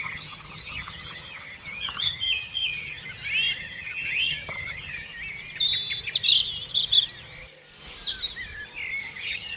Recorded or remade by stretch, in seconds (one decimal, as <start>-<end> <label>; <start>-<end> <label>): 0.0-3.0 remade; 3.0-3.6 recorded; 3.6-5.1 remade; 5.1-9.0 recorded; 9.0-9.6 remade